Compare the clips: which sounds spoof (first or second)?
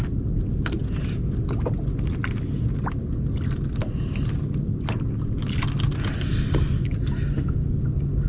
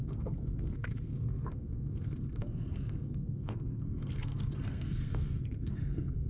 second